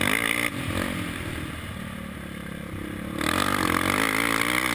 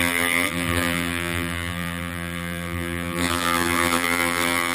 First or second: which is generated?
second